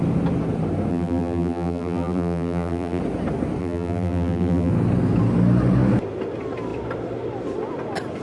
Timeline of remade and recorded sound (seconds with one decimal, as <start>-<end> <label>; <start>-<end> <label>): 0.0-0.9 recorded; 0.9-3.0 remade; 3.0-3.6 recorded; 3.6-4.7 remade; 4.7-8.2 recorded